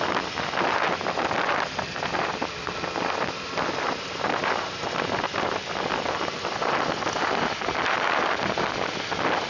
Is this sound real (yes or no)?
yes